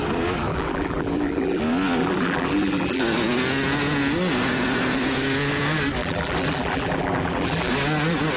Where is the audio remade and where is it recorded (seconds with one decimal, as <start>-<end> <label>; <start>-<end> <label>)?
0.0-0.5 recorded; 0.5-1.6 remade; 1.6-2.0 recorded; 2.0-3.0 remade; 3.0-6.0 recorded; 6.0-7.7 remade; 7.7-8.4 recorded